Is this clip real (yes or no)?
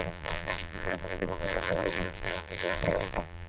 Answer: no